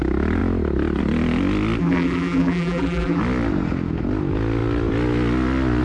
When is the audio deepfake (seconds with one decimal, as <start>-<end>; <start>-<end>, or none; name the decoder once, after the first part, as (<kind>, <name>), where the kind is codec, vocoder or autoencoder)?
1.8-3.2 (vocoder, BigVGAN v2)